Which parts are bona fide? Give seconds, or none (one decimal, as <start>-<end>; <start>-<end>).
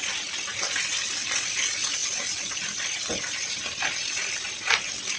0.0-5.2